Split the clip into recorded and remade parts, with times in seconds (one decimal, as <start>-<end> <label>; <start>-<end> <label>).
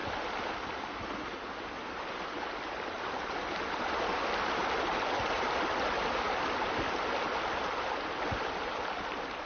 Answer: 0.0-9.5 recorded